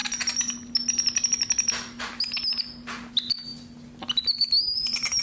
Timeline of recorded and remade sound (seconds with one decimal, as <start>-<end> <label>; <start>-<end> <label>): 0.0-5.2 recorded